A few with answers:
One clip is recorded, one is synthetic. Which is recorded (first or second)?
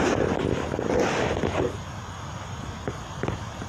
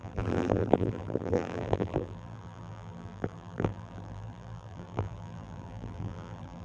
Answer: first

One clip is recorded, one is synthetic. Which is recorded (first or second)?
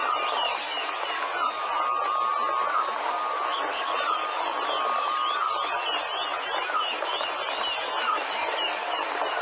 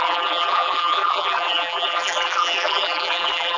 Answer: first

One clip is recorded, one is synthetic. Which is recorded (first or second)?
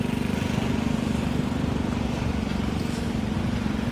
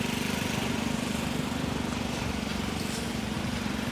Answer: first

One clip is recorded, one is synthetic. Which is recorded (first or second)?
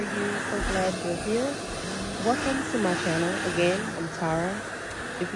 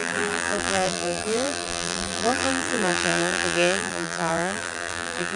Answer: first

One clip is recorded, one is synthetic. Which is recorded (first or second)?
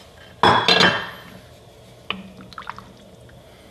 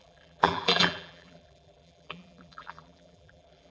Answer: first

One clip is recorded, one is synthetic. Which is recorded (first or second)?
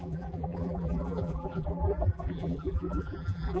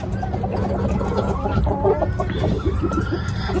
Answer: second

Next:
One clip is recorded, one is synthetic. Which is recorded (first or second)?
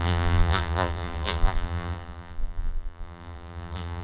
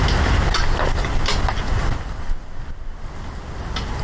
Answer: second